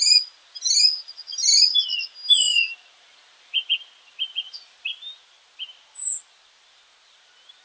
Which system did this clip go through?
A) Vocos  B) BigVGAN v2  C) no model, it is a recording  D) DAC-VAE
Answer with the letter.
C